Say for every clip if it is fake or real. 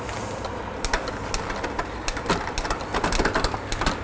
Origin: real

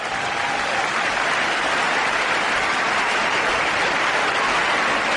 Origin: real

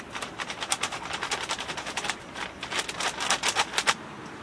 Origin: fake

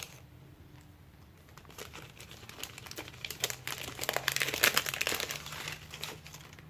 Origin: fake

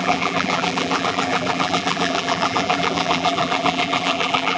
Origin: fake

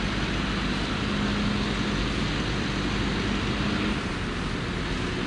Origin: real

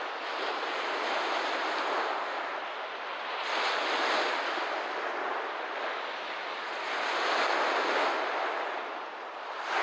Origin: real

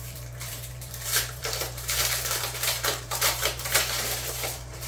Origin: fake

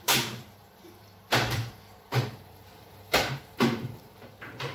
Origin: fake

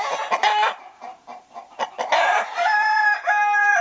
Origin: fake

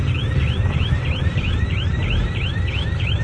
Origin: fake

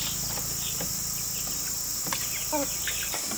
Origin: real